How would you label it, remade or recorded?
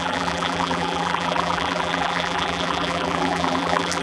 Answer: remade